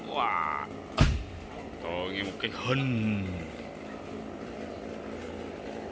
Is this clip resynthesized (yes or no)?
no